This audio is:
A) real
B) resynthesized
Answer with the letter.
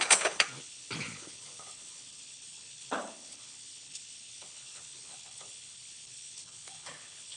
B